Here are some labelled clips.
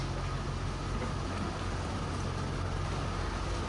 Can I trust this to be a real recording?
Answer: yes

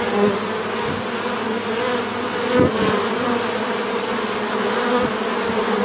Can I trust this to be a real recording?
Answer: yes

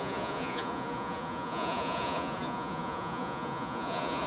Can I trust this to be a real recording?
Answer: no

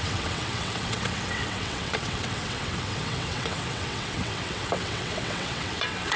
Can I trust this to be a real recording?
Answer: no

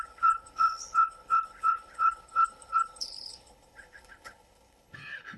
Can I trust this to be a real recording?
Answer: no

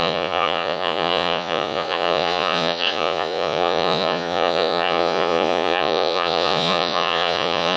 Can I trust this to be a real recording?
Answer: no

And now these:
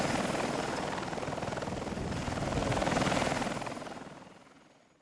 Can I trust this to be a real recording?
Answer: yes